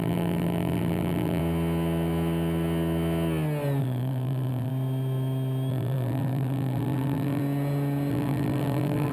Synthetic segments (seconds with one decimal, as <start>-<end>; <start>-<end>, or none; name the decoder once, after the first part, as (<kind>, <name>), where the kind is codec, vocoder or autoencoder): 0.0-1.4 (vocoder, BigVGAN v2); 3.8-4.7; 5.7-7.4; 8.1-9.1